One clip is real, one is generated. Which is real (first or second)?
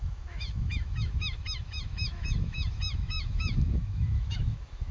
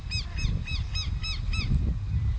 second